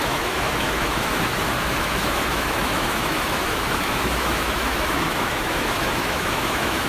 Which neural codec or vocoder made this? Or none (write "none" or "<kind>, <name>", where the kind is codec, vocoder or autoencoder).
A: autoencoder, DAC-VAE